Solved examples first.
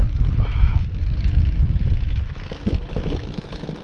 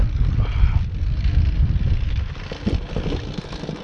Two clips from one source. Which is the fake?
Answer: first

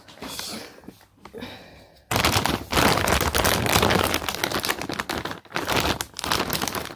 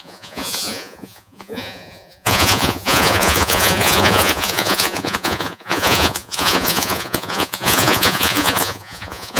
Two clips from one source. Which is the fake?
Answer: second